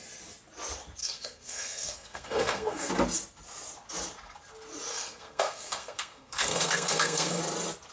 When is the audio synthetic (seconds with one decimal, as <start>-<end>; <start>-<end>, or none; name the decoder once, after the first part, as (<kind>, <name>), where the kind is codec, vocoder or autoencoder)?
1.0-2.9 (codec, SNAC); 4.9-7.4